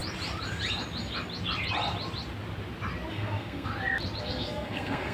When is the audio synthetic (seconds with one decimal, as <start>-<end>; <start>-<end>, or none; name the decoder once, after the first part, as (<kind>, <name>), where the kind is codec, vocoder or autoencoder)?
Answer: 3.1-3.7 (codec, SNAC); 4.2-5.1